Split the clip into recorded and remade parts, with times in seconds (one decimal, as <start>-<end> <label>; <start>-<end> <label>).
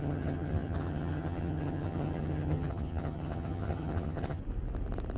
0.0-4.4 remade; 4.4-5.2 recorded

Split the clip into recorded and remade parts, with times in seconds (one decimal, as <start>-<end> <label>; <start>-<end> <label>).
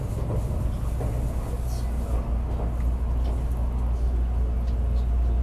0.0-5.4 recorded